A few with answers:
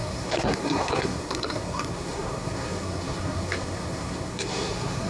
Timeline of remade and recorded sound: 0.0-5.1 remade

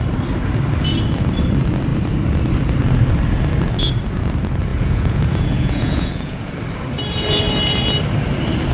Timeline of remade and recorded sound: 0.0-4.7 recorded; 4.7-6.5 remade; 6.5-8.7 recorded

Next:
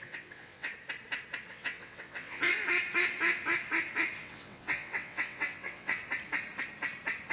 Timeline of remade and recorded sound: 0.0-0.7 remade; 0.7-1.5 recorded; 1.5-2.4 remade; 2.4-4.2 recorded; 4.2-6.0 remade; 6.0-7.3 recorded

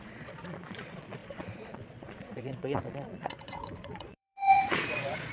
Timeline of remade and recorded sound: 0.0-5.3 remade

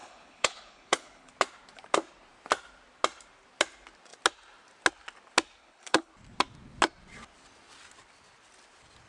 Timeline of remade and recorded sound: 0.0-1.3 remade; 1.3-5.6 recorded; 5.6-6.1 remade; 6.1-9.1 recorded